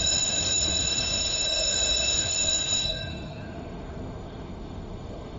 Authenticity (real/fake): fake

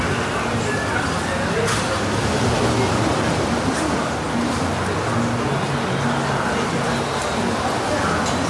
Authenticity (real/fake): real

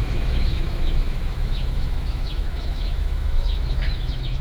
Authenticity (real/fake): fake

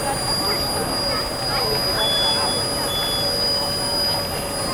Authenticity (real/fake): real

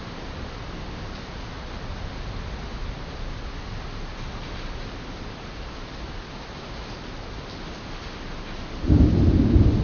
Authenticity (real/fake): real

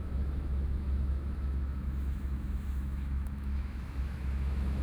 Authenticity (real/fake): fake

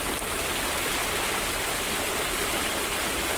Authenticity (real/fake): real